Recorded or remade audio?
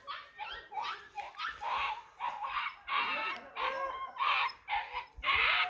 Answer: recorded